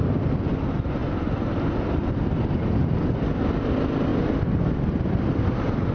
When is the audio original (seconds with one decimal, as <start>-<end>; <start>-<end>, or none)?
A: 0.0-4.1